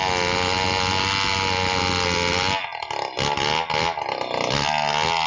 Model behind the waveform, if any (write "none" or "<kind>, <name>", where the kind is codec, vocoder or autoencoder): none